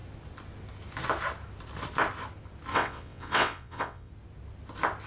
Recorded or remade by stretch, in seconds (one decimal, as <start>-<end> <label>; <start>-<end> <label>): 0.0-2.7 recorded; 2.7-4.1 remade; 4.1-5.1 recorded